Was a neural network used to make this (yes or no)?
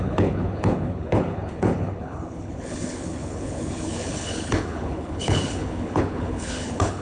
yes